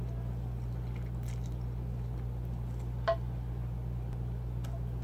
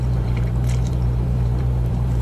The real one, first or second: first